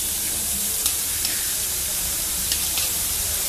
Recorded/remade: remade